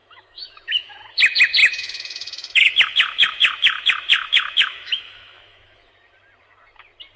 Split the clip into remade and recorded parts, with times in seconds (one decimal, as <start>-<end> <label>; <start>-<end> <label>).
0.0-1.1 remade; 1.1-1.6 recorded; 1.6-5.9 remade; 5.9-7.2 recorded